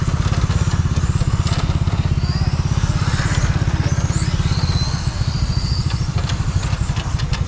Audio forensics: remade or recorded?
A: recorded